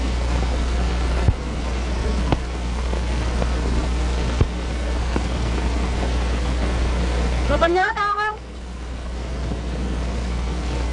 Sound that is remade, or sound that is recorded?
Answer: remade